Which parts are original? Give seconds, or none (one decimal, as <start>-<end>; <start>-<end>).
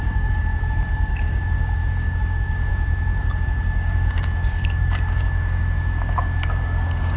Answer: 2.7-3.2